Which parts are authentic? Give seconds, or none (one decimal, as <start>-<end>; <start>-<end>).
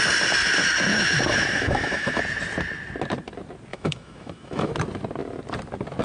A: 0.0-0.9; 2.2-3.7; 4.7-6.0